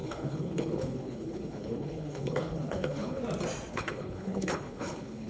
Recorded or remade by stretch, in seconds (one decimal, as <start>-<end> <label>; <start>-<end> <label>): 0.0-3.2 remade; 3.2-3.7 recorded; 3.7-5.3 remade

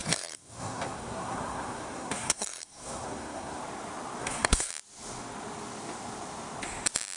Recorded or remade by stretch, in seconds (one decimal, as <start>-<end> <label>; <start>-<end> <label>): 0.0-3.6 remade; 3.6-4.2 recorded; 4.2-4.7 remade; 4.7-7.2 recorded